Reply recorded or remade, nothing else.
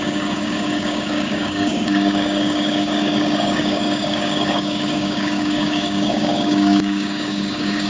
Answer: remade